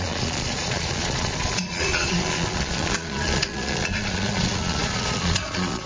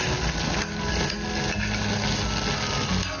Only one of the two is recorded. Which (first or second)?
second